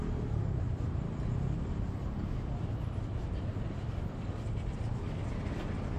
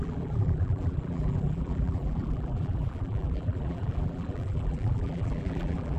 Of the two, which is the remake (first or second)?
second